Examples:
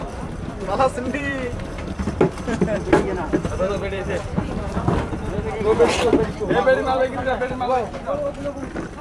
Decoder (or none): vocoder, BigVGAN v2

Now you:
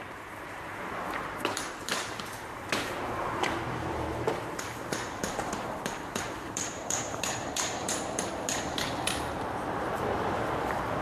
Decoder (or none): vocoder, BigVGAN v2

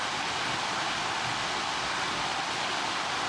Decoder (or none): none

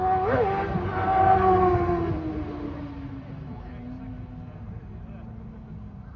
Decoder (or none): none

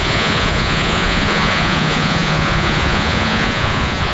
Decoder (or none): vocoder, Vocos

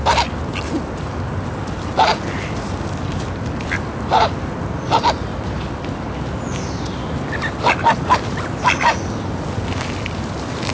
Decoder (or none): none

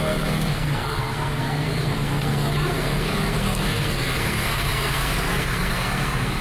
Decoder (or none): codec, SNAC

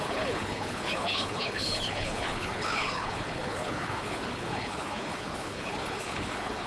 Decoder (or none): codec, HILCodec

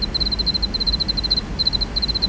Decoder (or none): none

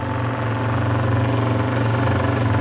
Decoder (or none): none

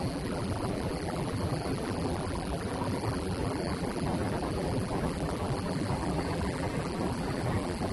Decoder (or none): vocoder, BigVGAN v2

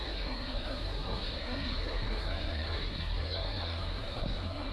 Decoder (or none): codec, SNAC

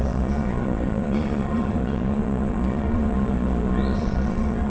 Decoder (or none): vocoder, Vocos